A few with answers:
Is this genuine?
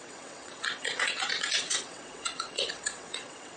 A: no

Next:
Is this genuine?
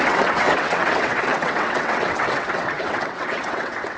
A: no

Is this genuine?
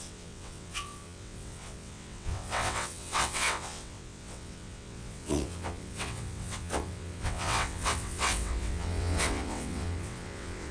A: no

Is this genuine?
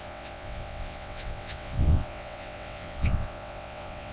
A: no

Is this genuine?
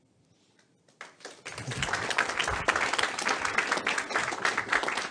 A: yes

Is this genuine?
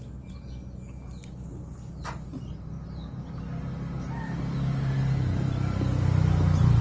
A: yes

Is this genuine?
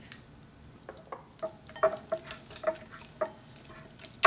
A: yes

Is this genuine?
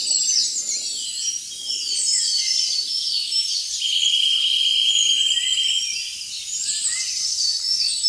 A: yes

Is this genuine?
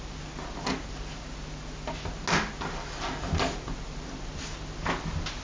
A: yes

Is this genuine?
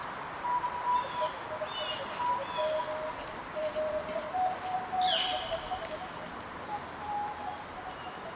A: yes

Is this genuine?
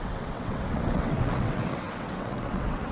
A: no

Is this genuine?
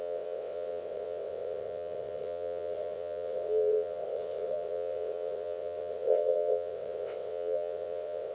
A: no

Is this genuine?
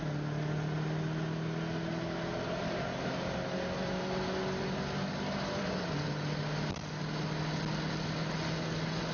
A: yes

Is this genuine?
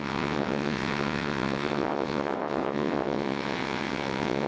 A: no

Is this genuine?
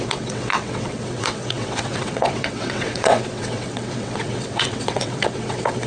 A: no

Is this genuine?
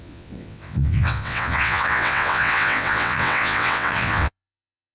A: no